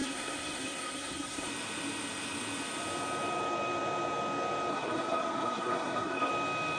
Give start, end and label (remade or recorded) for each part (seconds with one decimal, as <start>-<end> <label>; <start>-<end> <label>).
0.0-1.5 remade; 1.5-4.7 recorded; 4.7-6.3 remade; 6.3-6.8 recorded